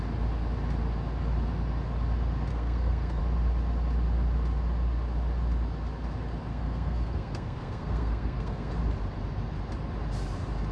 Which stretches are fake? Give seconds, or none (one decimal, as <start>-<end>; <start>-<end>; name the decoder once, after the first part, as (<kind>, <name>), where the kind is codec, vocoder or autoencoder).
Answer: 2.5-3.2 (codec, SNAC); 6.5-8.7